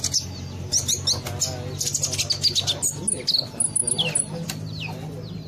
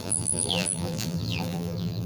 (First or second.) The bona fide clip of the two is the first